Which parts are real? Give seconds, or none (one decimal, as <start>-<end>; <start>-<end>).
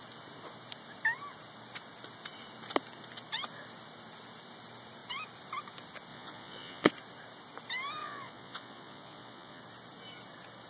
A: 0.0-6.1; 6.9-8.0; 9.6-10.7